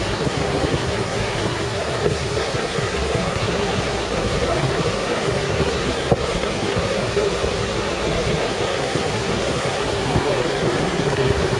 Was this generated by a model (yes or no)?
yes